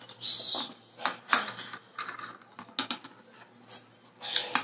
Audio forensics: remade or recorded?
recorded